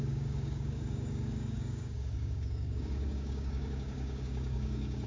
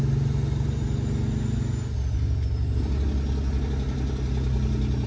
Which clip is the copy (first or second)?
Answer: first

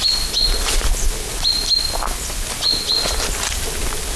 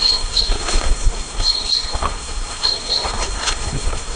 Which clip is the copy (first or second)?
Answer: second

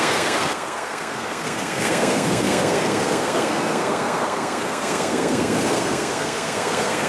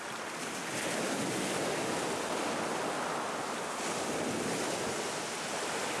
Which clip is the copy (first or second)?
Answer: first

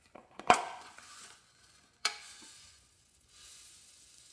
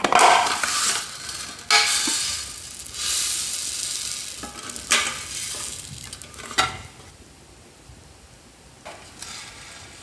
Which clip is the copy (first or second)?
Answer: first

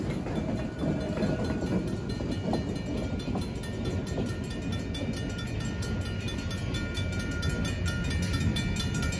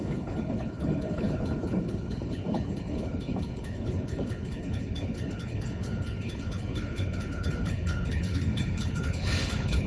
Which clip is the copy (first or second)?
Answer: second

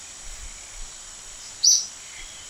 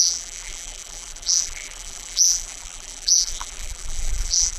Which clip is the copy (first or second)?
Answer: second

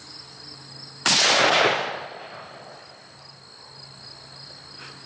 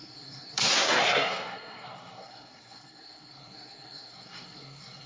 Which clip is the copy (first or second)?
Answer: second